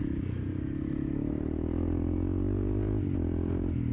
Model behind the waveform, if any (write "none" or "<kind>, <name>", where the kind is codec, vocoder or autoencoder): none